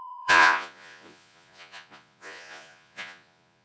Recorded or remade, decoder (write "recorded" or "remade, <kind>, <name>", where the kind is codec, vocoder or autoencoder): remade, vocoder, Vocos